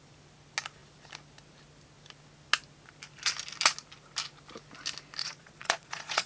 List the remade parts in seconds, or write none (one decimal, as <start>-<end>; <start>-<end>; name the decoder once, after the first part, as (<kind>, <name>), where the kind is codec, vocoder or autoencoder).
5.2-6.3 (vocoder, Vocos)